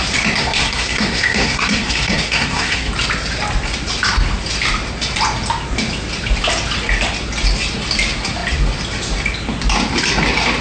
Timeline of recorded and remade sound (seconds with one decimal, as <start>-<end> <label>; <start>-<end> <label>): 0.0-0.4 recorded; 0.4-2.9 remade; 2.9-10.6 recorded